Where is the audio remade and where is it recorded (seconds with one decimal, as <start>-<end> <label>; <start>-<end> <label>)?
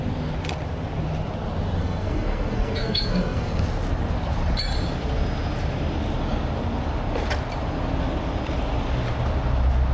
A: 0.0-1.8 recorded; 1.8-3.6 remade; 3.6-9.9 recorded